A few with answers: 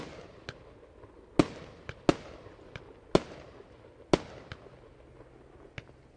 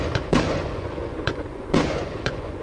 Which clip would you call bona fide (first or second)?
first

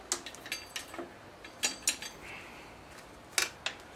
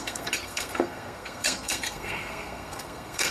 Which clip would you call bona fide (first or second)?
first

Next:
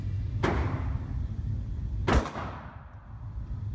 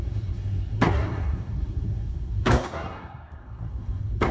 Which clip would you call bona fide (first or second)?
first